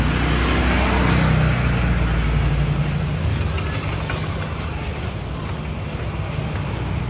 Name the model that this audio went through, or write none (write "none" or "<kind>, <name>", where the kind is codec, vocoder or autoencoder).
none